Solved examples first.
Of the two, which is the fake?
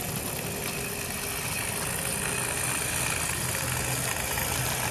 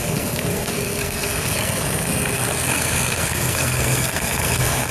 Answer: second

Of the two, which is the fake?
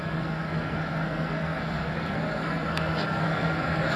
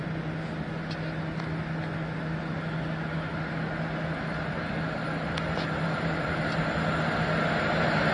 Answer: first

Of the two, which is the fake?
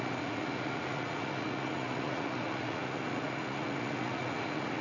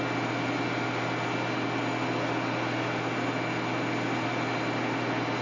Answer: first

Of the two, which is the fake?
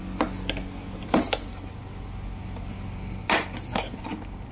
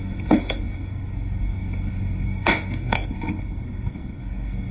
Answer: second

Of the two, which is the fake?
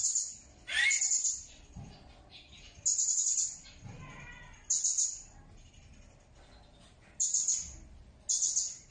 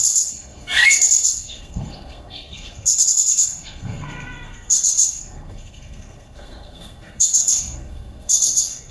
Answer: second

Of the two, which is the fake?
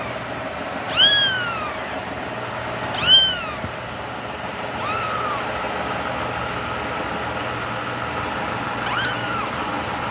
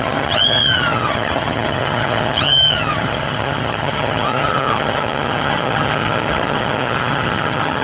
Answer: second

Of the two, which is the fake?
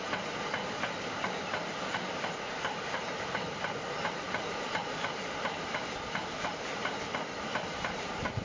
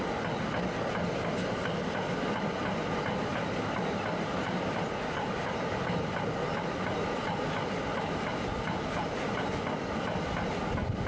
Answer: first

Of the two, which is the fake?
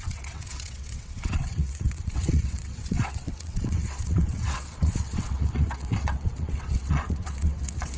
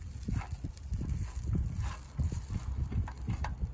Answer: first